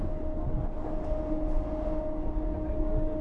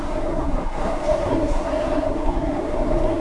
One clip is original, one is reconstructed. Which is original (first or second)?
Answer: first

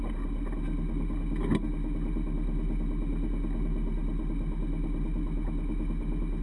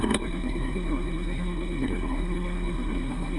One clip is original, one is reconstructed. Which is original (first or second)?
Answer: first